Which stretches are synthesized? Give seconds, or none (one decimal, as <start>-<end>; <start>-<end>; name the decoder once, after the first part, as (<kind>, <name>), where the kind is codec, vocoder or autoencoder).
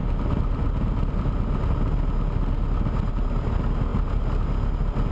none